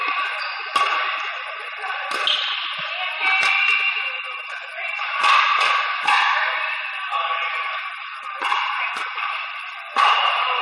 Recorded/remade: recorded